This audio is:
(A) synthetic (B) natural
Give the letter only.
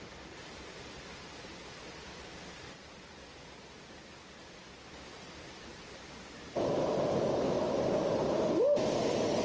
B